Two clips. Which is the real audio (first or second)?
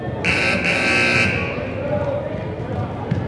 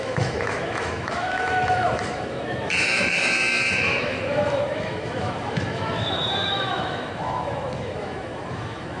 first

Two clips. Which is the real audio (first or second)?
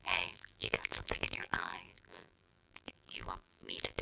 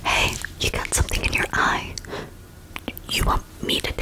second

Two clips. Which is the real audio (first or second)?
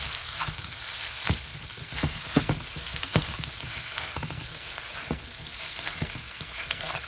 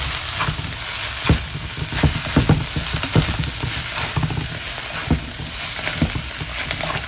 second